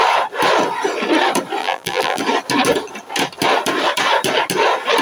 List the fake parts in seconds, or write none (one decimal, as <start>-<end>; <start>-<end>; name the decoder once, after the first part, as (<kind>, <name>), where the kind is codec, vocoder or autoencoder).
1.6-2.2 (vocoder, BigVGAN v2)